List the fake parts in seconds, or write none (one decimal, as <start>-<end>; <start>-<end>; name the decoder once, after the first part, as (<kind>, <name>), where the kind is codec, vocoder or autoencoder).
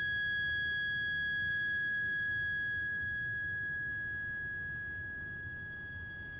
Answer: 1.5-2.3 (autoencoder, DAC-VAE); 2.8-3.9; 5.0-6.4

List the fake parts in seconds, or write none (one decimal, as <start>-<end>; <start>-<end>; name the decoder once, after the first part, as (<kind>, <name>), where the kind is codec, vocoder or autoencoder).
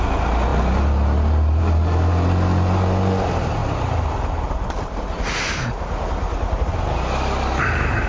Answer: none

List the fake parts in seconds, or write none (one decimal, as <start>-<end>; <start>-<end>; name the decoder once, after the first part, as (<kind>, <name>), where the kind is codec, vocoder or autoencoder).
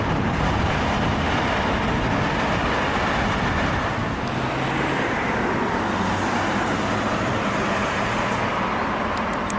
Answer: 4.0-4.5 (vocoder, BigVGAN v2)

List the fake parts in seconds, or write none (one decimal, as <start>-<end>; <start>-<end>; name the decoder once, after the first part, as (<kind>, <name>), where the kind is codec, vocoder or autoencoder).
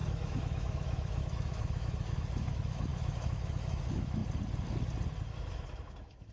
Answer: 0.0-4.2 (autoencoder, DAC-VAE); 5.2-6.3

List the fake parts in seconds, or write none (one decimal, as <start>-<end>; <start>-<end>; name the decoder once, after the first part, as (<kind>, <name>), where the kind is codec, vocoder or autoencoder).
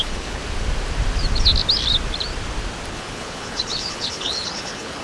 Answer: 0.0-0.4 (codec, HILCodec); 2.9-5.0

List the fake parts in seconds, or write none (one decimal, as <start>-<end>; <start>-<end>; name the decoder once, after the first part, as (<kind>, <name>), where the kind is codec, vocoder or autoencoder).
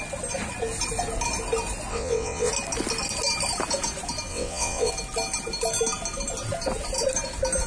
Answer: 1.9-2.5 (vocoder, WaveNeXt); 4.3-4.9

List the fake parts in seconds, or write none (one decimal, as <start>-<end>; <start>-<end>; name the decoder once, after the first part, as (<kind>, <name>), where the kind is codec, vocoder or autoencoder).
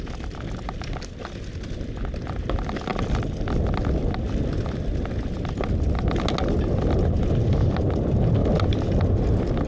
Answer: none